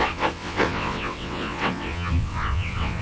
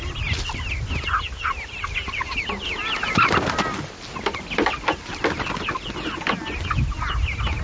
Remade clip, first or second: first